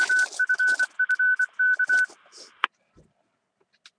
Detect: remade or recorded recorded